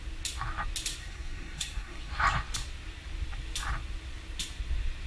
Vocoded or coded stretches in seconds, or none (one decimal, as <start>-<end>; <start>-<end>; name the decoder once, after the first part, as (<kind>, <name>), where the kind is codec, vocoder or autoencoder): 1.0-2.1 (codec, SNAC)